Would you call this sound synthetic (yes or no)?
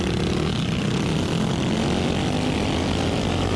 no